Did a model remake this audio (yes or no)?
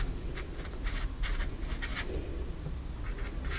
no